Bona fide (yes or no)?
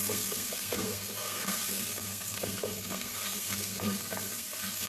no